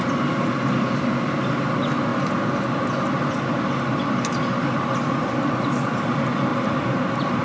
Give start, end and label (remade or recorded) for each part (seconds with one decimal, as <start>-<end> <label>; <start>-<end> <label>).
0.0-6.5 recorded; 6.5-7.4 remade